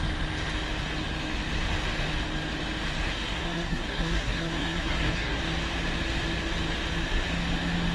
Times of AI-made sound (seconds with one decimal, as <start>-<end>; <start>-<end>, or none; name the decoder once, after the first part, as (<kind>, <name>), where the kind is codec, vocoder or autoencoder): 3.1-5.4 (codec, SNAC)